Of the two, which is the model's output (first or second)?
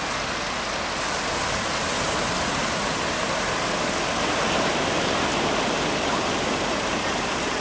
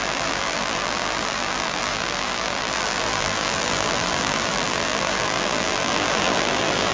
second